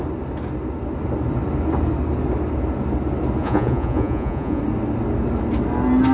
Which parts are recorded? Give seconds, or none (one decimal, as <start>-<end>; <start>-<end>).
0.0-3.4; 4.6-6.1